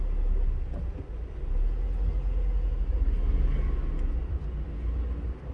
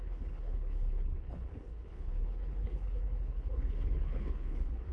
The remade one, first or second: second